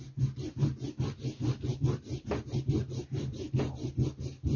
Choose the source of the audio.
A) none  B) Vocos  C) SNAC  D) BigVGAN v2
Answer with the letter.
A